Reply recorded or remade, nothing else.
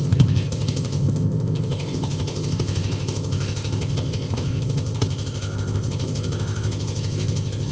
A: remade